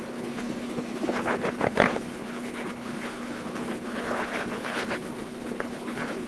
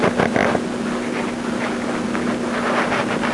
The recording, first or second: second